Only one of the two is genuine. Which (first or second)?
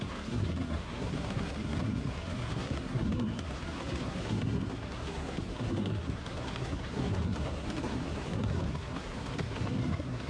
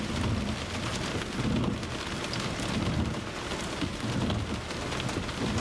second